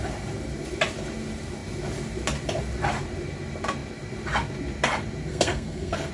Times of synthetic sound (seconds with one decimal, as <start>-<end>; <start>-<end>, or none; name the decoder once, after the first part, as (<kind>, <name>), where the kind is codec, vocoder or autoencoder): 5.3-6.1 (codec, SNAC)